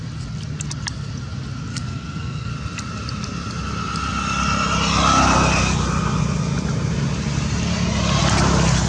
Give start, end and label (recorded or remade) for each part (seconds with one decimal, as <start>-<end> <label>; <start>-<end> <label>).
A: 0.0-1.7 recorded; 1.7-2.5 remade; 2.5-8.9 recorded

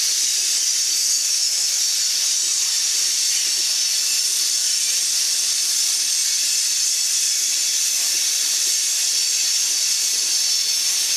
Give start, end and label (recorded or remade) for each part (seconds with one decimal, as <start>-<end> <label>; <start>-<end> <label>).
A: 0.0-1.0 recorded; 1.0-1.8 remade; 1.8-11.2 recorded

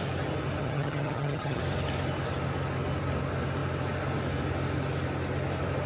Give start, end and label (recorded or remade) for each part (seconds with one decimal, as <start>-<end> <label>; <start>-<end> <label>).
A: 0.0-0.6 recorded; 0.6-1.6 remade; 1.6-5.9 recorded

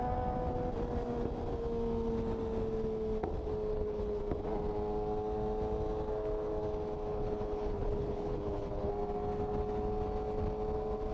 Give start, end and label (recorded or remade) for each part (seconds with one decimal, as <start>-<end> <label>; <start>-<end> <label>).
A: 0.0-3.7 recorded; 3.7-4.2 remade; 4.2-7.1 recorded; 7.1-8.9 remade; 8.9-11.1 recorded

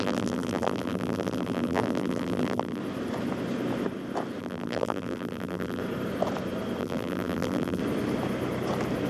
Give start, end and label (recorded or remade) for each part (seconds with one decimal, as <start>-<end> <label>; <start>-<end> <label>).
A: 0.0-2.8 remade; 2.8-4.4 recorded; 4.4-5.8 remade; 5.8-6.8 recorded; 6.8-7.8 remade; 7.8-9.1 recorded

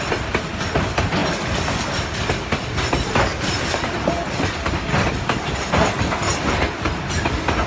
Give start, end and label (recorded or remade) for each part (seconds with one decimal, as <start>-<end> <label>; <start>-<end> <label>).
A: 0.0-7.7 recorded

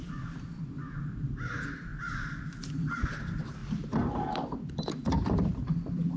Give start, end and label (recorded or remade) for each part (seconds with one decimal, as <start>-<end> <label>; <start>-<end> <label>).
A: 0.0-3.6 remade; 3.6-4.3 recorded; 4.3-6.2 remade

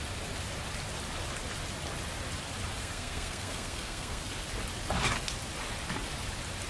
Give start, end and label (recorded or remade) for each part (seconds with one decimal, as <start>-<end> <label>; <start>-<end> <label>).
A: 0.0-2.8 recorded; 2.8-4.2 remade; 4.2-6.7 recorded